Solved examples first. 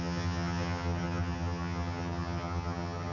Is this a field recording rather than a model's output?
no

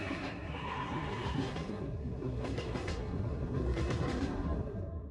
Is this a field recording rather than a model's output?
no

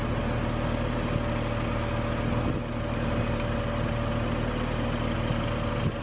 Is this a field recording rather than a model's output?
yes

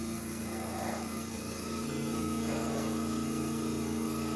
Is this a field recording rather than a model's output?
no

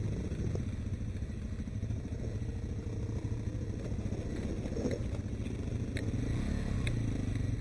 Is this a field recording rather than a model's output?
yes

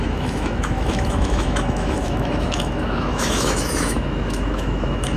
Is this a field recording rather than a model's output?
no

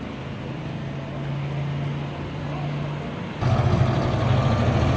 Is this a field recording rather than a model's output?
yes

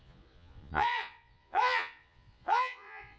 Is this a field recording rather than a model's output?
no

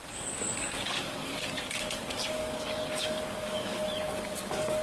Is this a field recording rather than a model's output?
no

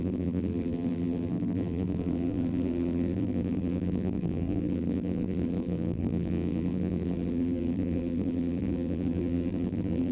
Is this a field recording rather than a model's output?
no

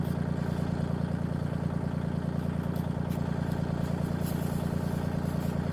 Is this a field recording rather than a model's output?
yes